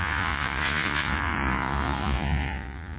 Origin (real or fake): fake